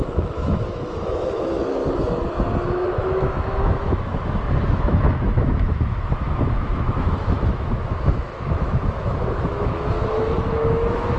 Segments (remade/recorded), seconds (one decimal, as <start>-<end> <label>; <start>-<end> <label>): 0.0-1.8 remade; 1.8-2.9 recorded; 2.9-11.2 remade